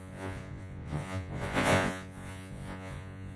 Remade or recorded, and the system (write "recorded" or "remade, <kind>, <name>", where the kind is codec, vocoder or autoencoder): remade, vocoder, Vocos